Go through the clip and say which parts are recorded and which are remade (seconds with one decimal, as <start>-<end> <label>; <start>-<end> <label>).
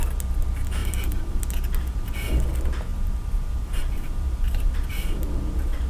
0.0-0.8 recorded; 0.8-1.4 remade; 1.4-2.9 recorded; 2.9-5.3 remade; 5.3-5.9 recorded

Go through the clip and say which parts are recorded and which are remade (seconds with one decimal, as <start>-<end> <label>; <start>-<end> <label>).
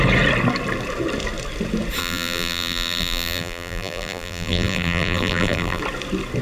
0.0-2.0 recorded; 2.0-5.8 remade; 5.8-6.4 recorded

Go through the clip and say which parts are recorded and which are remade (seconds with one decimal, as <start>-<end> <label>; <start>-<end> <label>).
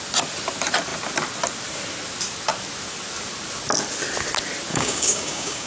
0.0-4.7 recorded; 4.7-5.7 remade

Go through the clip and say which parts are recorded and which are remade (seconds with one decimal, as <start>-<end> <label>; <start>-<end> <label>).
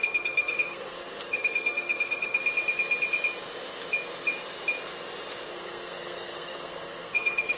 0.0-2.4 remade; 2.4-5.5 recorded; 5.5-7.6 remade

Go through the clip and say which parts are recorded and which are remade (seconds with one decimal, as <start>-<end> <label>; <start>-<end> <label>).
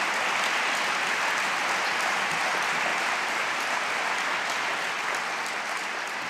0.0-1.6 recorded; 1.6-2.4 remade; 2.4-2.9 recorded; 2.9-3.9 remade; 3.9-6.3 recorded